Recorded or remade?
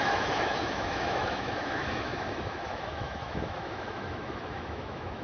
remade